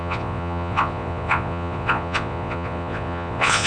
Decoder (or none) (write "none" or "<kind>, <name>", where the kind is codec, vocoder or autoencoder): vocoder, Vocos